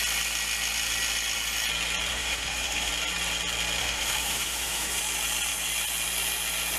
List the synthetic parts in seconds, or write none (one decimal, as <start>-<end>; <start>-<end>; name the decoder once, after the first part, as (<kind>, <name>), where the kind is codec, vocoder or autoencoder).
2.1-2.9 (autoencoder, DAC-VAE); 3.8-5.0